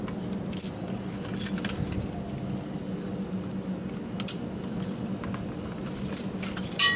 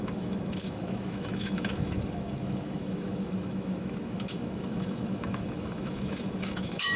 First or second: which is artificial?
second